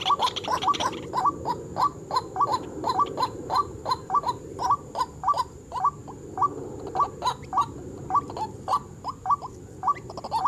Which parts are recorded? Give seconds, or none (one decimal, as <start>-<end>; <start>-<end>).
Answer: 0.0-2.5; 5.6-10.5